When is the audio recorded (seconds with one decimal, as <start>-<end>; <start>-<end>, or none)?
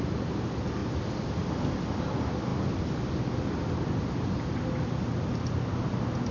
0.0-6.3